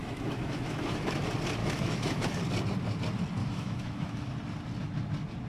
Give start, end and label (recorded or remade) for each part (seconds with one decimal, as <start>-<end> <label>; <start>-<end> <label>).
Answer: 0.0-1.2 remade; 1.2-1.6 recorded; 1.6-2.4 remade; 2.4-3.4 recorded; 3.4-4.3 remade; 4.3-5.5 recorded